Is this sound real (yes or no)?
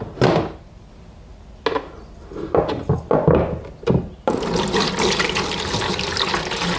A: yes